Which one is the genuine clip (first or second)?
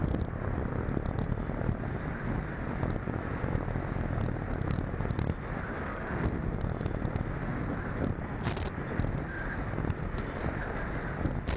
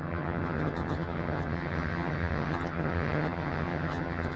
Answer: first